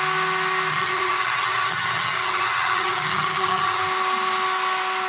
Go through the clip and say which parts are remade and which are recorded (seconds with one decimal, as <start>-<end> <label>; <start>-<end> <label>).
0.0-0.7 recorded; 0.7-3.8 remade; 3.8-5.1 recorded